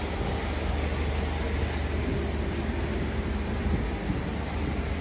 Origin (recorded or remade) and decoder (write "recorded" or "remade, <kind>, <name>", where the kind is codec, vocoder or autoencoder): recorded